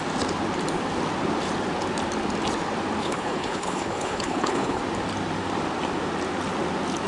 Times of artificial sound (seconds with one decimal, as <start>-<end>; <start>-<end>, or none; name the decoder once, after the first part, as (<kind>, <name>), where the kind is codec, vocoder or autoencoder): 3.0-4.8 (codec, HILCodec)